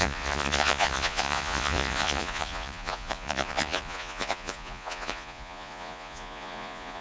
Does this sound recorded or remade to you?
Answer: remade